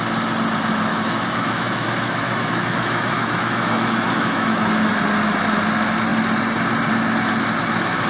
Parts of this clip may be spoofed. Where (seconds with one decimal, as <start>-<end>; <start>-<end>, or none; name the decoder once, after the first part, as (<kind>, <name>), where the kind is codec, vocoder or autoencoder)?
0.9-4.9 (autoencoder, DAC-VAE)